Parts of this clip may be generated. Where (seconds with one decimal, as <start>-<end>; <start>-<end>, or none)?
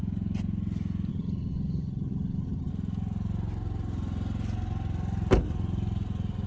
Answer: 1.1-2.7